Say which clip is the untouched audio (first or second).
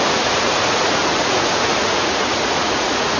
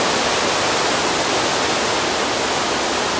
second